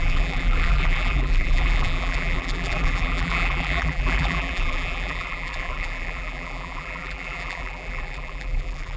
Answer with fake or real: fake